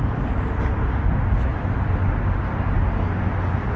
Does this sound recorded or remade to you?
recorded